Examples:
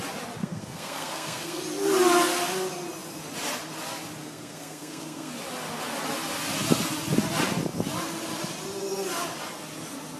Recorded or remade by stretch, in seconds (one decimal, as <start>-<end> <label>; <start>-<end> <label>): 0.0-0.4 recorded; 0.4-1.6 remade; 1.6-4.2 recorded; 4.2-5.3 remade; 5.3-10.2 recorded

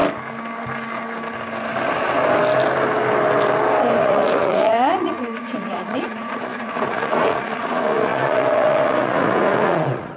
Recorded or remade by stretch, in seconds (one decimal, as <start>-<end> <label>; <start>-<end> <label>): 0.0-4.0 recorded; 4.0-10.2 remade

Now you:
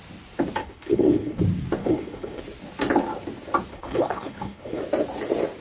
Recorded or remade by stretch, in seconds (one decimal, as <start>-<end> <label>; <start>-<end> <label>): 0.0-0.6 recorded; 0.6-1.4 remade; 1.4-1.8 recorded; 1.8-2.4 remade; 2.4-3.7 recorded; 3.7-4.8 remade; 4.8-5.6 recorded

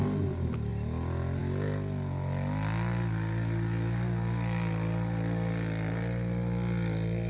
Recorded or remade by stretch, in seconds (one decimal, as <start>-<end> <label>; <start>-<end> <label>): 0.0-7.3 recorded